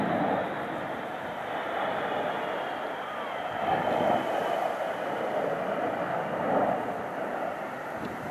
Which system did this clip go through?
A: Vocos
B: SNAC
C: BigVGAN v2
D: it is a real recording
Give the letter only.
D